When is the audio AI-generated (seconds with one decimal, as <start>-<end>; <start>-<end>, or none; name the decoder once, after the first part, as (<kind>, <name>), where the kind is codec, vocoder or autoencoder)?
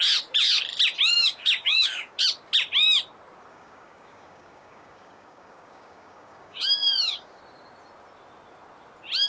1.1-2.1 (codec, DAC); 3.5-7.4